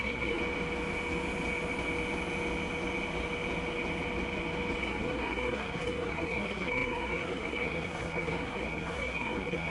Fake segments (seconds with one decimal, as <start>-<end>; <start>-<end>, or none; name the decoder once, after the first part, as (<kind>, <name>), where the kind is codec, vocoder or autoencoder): 0.0-0.4 (codec, SNAC); 4.8-9.7